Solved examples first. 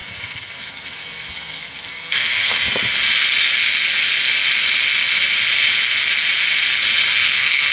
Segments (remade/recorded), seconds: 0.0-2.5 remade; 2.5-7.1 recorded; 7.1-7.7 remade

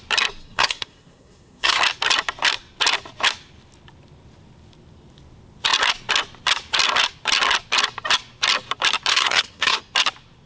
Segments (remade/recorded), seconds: 0.0-0.4 recorded; 0.4-1.8 remade; 1.8-9.1 recorded; 9.1-9.8 remade; 9.8-10.5 recorded

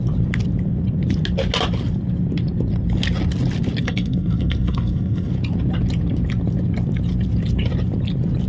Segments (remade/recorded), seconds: 0.0-3.8 recorded; 3.8-5.3 remade; 5.3-8.5 recorded

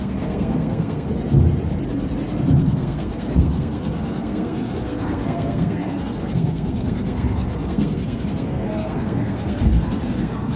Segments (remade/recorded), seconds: 0.0-1.1 remade; 1.1-2.6 recorded; 2.6-10.6 remade